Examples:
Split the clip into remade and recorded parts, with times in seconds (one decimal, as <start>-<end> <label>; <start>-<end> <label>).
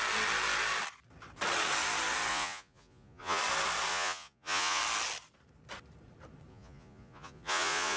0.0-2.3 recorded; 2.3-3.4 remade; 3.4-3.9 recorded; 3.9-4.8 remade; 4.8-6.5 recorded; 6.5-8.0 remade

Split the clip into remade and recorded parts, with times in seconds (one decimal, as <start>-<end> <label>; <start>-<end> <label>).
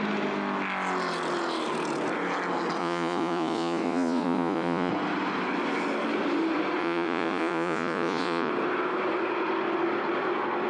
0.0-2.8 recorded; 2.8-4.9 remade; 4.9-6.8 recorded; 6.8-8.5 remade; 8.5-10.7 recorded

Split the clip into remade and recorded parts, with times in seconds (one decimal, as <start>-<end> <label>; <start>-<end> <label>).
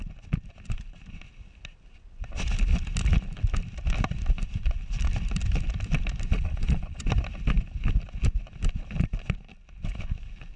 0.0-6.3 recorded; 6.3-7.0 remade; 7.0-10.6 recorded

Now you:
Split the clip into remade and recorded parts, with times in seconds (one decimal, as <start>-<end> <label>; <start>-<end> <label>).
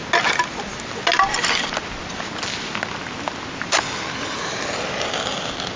0.0-5.8 recorded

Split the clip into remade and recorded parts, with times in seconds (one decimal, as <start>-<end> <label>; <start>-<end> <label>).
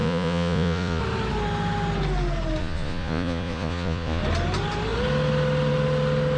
0.0-1.0 remade; 1.0-2.6 recorded; 2.6-4.2 remade; 4.2-6.4 recorded